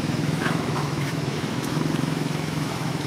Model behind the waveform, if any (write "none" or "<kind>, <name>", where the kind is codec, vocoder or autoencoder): autoencoder, DAC-VAE